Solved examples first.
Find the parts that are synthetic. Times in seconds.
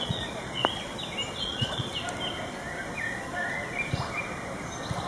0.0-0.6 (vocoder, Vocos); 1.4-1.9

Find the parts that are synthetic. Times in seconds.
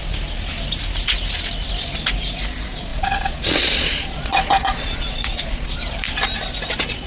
2.9-5.8 (vocoder, Vocos)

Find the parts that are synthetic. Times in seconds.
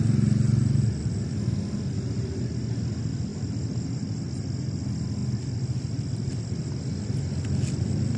none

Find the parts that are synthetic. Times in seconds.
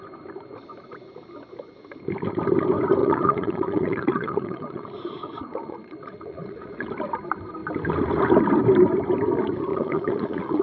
3.0-6.9 (vocoder, Vocos); 9.7-10.6